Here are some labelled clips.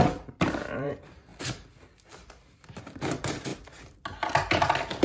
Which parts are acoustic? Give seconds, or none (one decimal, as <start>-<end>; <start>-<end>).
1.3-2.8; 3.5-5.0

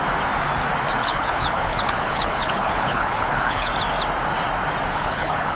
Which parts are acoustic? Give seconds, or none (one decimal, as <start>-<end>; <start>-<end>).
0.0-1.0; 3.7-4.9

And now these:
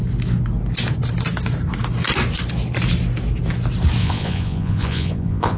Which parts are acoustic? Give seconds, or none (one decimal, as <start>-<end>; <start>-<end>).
0.0-4.0

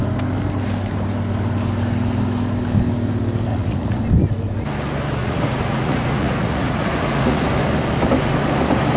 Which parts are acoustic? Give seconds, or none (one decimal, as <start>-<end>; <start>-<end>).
0.0-3.5; 4.0-5.2; 7.4-9.0

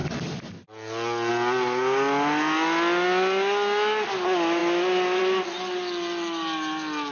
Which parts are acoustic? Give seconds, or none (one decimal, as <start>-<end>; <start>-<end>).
0.0-7.1